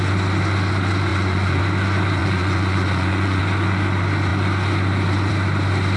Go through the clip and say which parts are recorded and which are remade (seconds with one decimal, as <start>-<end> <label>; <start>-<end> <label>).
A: 0.0-1.1 recorded; 1.1-1.6 remade; 1.6-2.2 recorded; 2.2-3.4 remade; 3.4-6.0 recorded